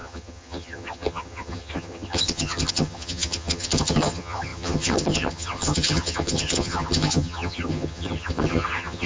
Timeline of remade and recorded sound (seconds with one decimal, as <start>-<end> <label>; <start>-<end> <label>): 0.0-9.1 remade

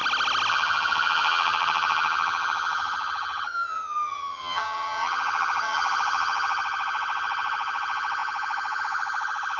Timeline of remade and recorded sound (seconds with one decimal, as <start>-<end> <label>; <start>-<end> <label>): 0.0-0.5 recorded; 0.5-9.6 remade

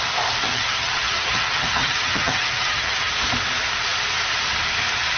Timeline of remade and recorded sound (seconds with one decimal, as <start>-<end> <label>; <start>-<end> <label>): 0.0-0.4 recorded; 0.4-3.1 remade; 3.1-5.2 recorded